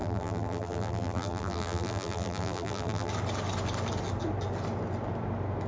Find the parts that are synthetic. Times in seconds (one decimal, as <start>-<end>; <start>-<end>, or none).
0.0-3.1